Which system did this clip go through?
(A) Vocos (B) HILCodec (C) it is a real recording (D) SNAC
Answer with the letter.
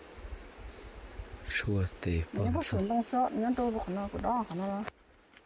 C